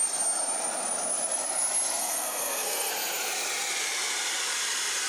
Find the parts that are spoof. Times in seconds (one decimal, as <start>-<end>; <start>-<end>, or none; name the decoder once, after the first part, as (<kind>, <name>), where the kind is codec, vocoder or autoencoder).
2.0-2.9 (codec, SNAC)